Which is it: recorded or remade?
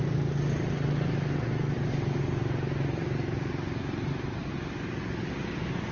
recorded